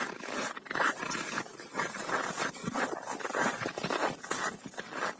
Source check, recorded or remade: recorded